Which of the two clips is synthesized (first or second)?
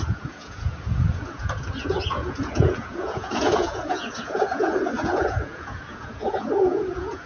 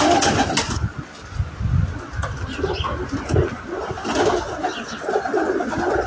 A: first